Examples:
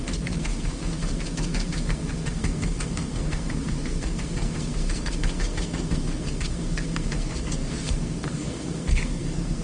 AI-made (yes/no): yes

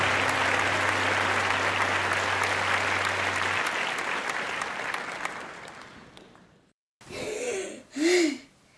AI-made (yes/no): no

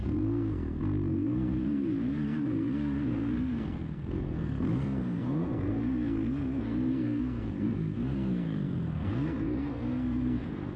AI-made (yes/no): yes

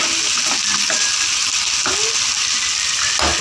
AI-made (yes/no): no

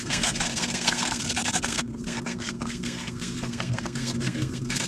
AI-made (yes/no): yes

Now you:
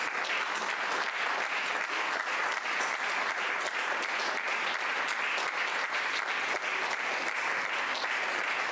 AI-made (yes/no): no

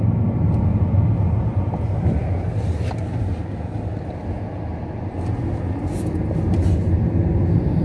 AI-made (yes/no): no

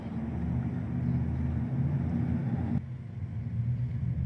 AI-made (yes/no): no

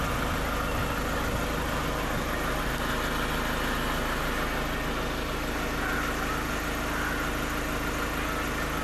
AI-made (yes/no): no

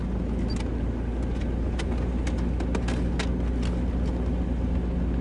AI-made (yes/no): no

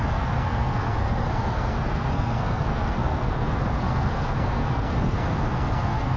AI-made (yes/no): yes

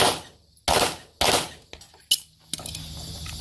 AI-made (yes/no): no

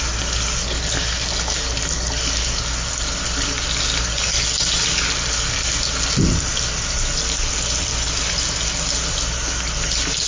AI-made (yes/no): no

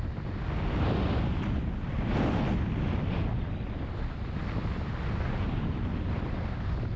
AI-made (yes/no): no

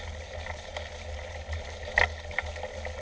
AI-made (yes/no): no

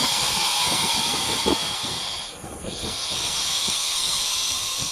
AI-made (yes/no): yes